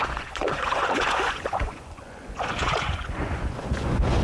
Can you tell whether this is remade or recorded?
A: remade